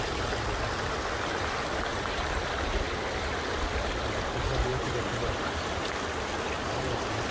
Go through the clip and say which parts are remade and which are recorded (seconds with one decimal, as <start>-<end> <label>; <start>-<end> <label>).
0.0-1.9 recorded; 1.9-2.5 remade; 2.5-4.7 recorded; 4.7-5.7 remade; 5.7-7.3 recorded